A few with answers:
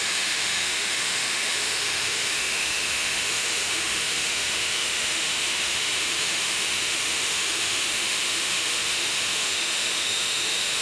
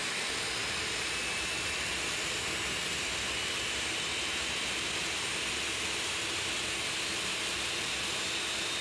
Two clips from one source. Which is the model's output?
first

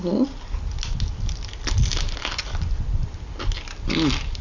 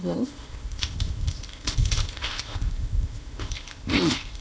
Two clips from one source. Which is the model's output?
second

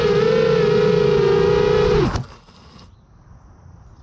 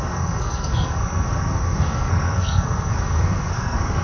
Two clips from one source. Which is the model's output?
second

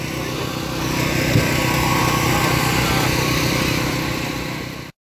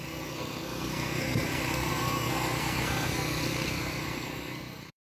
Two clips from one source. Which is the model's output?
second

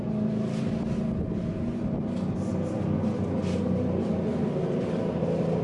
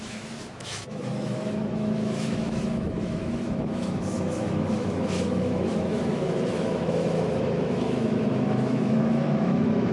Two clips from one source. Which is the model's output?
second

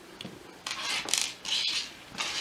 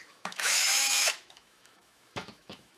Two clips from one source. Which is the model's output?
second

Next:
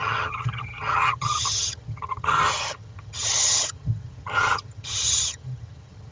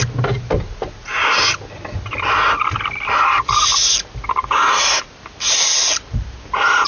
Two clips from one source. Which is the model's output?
first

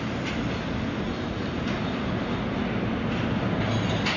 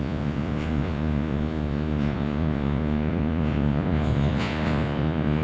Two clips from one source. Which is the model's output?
second